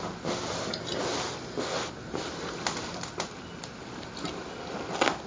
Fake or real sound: real